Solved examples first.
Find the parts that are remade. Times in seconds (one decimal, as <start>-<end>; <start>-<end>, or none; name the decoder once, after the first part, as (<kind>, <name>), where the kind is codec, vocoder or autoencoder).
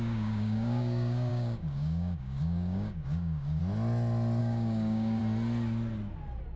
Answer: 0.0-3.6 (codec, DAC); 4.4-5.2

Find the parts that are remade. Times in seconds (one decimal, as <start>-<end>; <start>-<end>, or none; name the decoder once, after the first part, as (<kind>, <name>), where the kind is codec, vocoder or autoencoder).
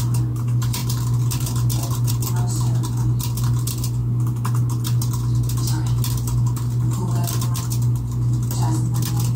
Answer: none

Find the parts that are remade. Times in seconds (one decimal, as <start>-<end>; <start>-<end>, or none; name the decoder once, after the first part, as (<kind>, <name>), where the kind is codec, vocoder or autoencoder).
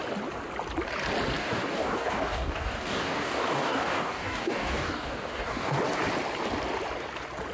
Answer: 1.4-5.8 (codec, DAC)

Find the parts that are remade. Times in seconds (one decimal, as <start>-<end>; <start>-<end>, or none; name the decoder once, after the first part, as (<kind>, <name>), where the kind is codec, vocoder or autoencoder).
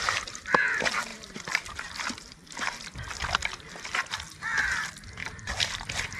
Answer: 1.1-3.7 (vocoder, BigVGAN v2); 5.2-6.2